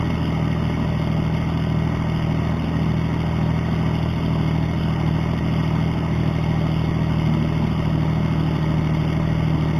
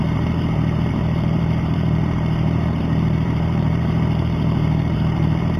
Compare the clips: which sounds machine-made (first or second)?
second